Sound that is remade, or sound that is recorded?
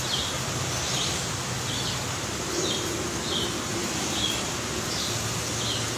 recorded